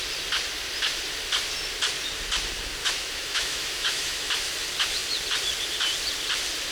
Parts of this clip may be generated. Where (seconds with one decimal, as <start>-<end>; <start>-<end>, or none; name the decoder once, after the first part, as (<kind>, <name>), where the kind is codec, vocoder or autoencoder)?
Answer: 2.8-4.3 (autoencoder, DAC-VAE)